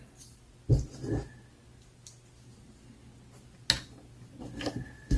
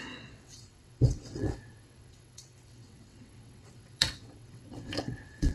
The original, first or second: first